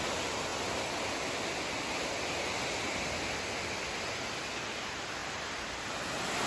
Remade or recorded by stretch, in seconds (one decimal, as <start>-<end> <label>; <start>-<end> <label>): 0.0-5.2 recorded; 5.2-5.8 remade; 5.8-6.5 recorded